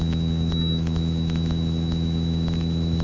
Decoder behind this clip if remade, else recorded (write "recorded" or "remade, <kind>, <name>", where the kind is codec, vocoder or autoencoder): remade, autoencoder, DAC-VAE